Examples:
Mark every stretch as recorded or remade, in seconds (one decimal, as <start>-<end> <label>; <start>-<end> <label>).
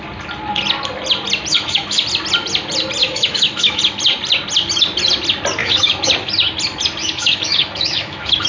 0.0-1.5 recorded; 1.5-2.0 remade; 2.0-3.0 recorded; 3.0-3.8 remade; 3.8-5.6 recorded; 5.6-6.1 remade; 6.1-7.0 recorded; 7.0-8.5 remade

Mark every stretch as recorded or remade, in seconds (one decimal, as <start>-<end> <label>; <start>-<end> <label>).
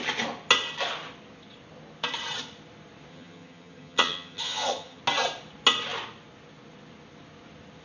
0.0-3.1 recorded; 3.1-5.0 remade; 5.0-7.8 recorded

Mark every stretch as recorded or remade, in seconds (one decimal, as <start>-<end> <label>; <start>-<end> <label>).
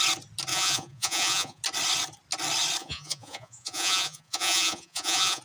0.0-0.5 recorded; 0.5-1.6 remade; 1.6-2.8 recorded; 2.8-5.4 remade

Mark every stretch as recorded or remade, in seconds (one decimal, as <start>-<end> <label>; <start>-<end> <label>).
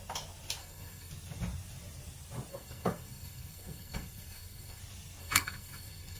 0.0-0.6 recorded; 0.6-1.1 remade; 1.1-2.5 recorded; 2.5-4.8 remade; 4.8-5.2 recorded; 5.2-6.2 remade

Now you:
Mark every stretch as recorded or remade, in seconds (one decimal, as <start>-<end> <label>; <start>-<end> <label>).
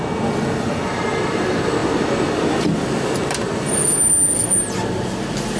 0.0-5.6 recorded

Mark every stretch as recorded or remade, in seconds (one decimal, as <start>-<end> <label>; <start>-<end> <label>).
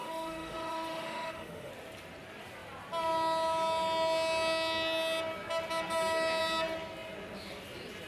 0.0-1.7 remade; 1.7-8.1 recorded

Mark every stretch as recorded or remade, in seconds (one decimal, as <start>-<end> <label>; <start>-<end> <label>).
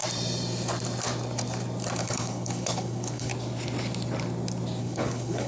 0.0-2.0 recorded; 2.0-3.3 remade; 3.3-4.8 recorded; 4.8-5.5 remade